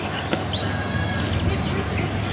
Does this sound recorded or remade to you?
recorded